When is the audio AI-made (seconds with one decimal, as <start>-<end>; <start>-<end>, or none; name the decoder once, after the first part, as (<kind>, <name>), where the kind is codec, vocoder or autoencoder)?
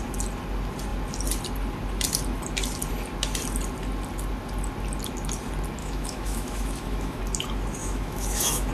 5.8-7.2 (autoencoder, DAC-VAE); 7.8-8.7